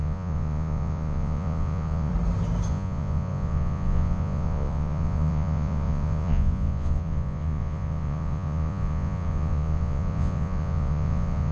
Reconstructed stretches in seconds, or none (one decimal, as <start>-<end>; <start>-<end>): 0.0-2.1; 2.7-11.5